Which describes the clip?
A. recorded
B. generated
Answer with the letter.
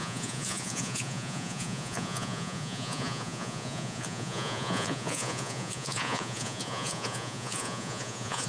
B